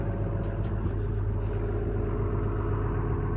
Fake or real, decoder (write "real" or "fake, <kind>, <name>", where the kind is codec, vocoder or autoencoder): real